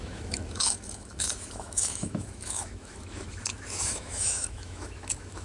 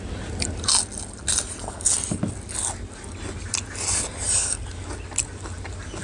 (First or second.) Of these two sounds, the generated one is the first